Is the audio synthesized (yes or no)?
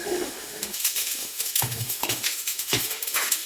yes